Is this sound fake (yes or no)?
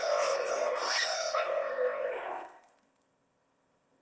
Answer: yes